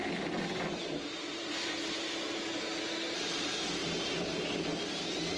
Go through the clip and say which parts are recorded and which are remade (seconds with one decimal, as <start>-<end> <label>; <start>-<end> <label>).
0.0-0.8 recorded; 0.8-2.7 remade; 2.7-3.2 recorded; 3.2-3.8 remade; 3.8-5.4 recorded